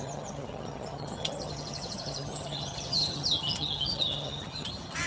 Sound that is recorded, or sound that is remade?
remade